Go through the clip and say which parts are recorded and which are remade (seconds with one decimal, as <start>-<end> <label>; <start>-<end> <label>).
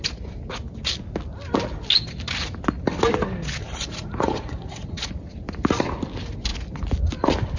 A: 0.0-3.6 recorded; 3.6-5.1 remade; 5.1-7.6 recorded